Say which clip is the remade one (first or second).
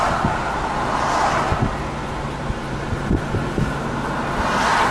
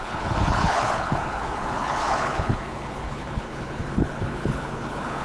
second